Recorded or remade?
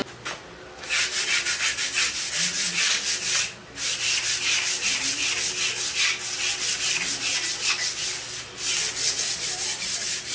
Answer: recorded